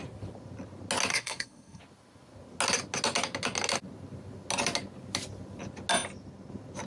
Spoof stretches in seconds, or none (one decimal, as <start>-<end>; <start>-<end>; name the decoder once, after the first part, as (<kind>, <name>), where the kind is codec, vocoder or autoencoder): 1.1-1.8 (codec, SNAC)